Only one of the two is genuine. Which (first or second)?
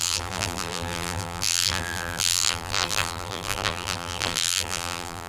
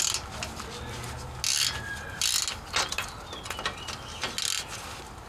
second